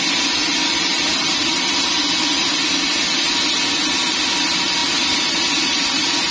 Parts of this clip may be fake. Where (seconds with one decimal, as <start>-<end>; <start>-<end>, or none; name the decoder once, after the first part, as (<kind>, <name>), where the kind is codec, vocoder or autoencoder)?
none